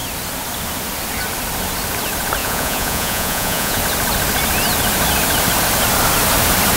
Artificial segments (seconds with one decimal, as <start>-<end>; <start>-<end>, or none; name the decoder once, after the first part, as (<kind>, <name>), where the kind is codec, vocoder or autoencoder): 2.4-3.8 (vocoder, Vocos)